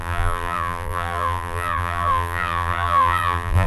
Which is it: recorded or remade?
remade